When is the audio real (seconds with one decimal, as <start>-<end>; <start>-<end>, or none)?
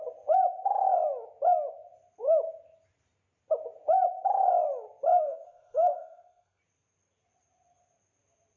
0.0-5.1; 6.6-8.6